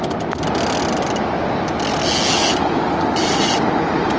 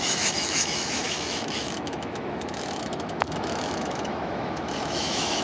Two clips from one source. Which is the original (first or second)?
first